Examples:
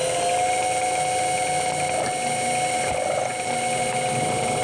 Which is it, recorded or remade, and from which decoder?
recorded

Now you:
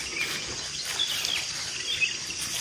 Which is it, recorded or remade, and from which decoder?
recorded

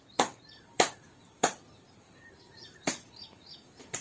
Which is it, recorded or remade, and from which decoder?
remade, vocoder, BigVGAN v2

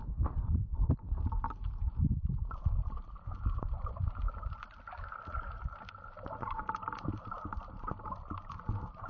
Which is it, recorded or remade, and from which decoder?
recorded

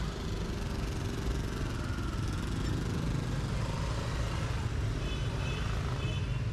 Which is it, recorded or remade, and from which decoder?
recorded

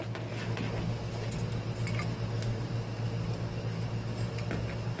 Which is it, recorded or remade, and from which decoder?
recorded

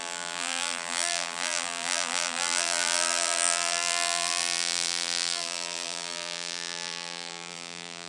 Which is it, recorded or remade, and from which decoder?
remade, vocoder, BigVGAN v2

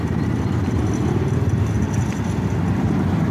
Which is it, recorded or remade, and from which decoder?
recorded